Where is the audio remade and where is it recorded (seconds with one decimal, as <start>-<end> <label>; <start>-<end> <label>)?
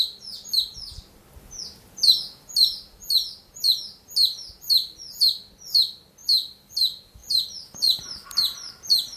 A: 0.0-6.2 recorded; 6.2-6.7 remade; 6.7-7.2 recorded; 7.2-8.7 remade; 8.7-9.2 recorded